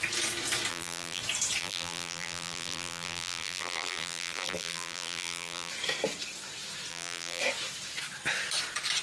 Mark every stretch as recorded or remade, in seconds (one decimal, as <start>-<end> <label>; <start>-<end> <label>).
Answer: 0.0-0.7 recorded; 0.7-1.2 remade; 1.2-1.6 recorded; 1.6-5.7 remade; 5.7-6.9 recorded; 6.9-7.4 remade; 7.4-9.0 recorded